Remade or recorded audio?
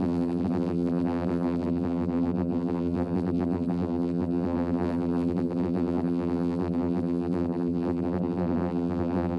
remade